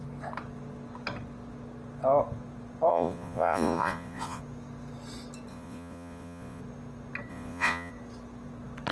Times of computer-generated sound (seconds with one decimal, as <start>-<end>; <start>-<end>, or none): 2.9-4.4; 5.5-6.6; 7.3-7.9